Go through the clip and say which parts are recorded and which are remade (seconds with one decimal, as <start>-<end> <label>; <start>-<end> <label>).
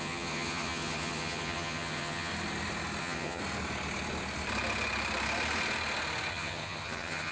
0.0-2.3 remade; 2.3-3.0 recorded; 3.0-3.4 remade; 3.4-6.3 recorded; 6.3-7.3 remade